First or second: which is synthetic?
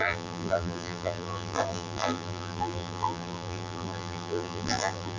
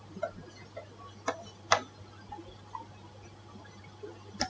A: first